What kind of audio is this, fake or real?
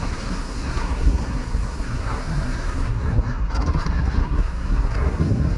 fake